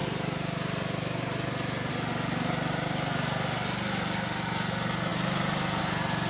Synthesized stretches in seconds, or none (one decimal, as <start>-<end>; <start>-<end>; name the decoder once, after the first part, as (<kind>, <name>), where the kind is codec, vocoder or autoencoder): none